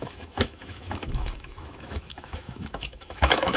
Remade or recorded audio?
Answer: remade